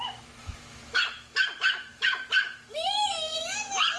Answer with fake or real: fake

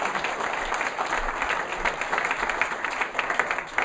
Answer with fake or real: real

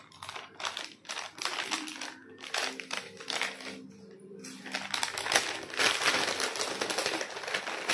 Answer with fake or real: real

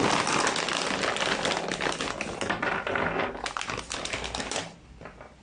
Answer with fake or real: real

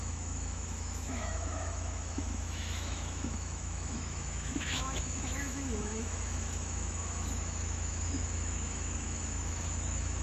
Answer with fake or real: fake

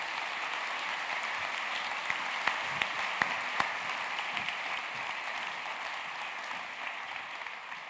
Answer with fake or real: real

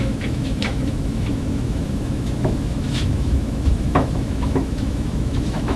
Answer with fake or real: fake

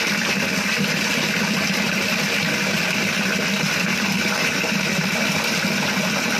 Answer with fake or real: real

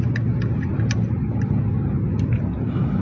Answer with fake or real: real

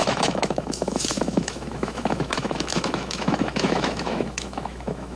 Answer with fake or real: fake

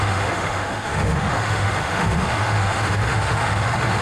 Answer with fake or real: fake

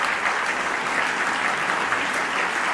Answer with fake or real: real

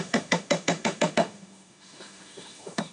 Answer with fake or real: fake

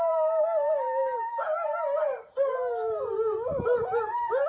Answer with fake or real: real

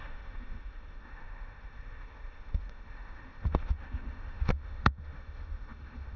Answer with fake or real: fake